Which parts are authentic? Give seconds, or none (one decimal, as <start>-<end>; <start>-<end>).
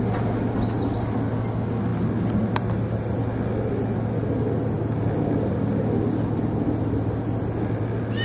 0.0-8.2